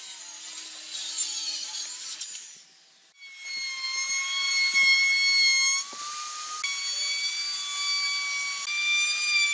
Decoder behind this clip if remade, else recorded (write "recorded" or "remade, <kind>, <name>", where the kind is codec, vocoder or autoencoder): recorded